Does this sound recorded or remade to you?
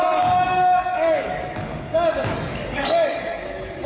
remade